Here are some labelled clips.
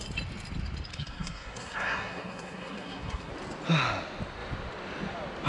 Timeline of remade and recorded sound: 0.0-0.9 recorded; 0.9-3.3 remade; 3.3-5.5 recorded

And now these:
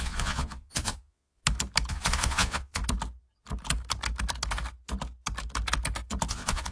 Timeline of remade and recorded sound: 0.0-1.4 remade; 1.4-1.9 recorded; 1.9-2.8 remade; 2.8-6.3 recorded; 6.3-6.7 remade

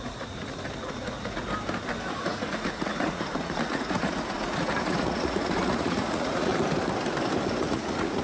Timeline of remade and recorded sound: 0.0-1.4 remade; 1.4-2.1 recorded; 2.1-6.5 remade; 6.5-7.6 recorded; 7.6-8.2 remade

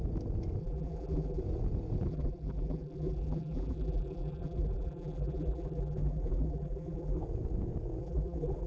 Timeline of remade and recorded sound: 0.0-0.6 recorded; 0.6-1.4 remade; 1.4-2.1 recorded; 2.1-7.2 remade; 7.2-8.0 recorded; 8.0-8.7 remade

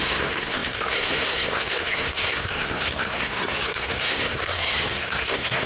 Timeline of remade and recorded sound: 0.0-5.7 remade

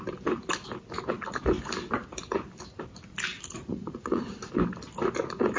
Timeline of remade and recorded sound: 0.0-3.3 recorded; 3.3-4.4 remade; 4.4-5.6 recorded

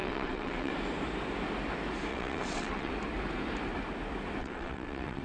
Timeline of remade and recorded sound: 0.0-0.7 remade; 0.7-2.1 recorded; 2.1-2.9 remade; 2.9-4.4 recorded; 4.4-5.2 remade